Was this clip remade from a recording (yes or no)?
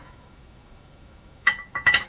yes